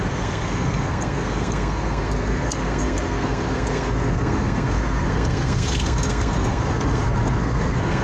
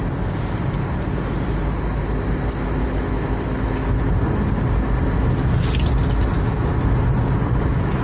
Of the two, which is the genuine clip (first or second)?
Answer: second